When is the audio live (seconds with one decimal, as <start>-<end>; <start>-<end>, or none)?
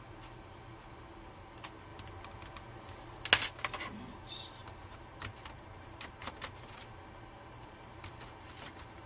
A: 0.0-4.6; 6.8-9.1